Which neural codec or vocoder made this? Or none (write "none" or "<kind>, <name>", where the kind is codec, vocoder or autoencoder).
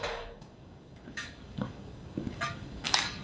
codec, DAC